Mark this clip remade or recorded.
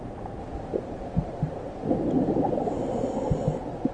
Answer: recorded